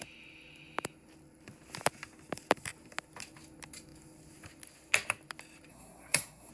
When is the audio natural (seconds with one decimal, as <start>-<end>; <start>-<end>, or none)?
0.0-5.7